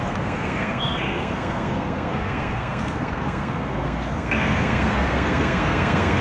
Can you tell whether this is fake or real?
fake